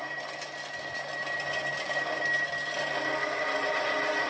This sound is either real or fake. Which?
real